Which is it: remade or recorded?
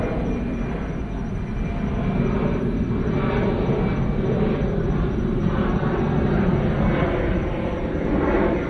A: recorded